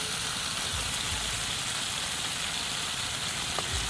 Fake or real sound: real